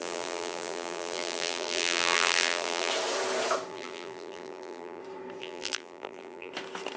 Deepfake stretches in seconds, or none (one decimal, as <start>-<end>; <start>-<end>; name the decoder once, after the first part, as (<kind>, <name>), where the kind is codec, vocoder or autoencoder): 0.0-2.9 (vocoder, BigVGAN v2); 3.7-5.0; 5.4-6.5